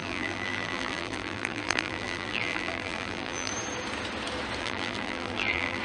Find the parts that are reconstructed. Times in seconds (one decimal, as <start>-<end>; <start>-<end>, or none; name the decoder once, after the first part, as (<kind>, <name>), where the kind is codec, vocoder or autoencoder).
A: 0.0-3.5 (vocoder, BigVGAN v2); 4.6-5.8